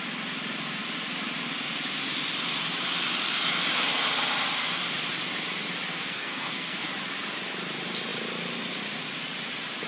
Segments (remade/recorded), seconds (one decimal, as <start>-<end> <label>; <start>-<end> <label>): 0.0-5.9 recorded; 5.9-6.9 remade; 6.9-9.9 recorded